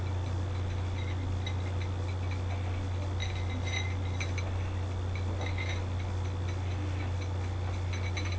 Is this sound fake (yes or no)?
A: no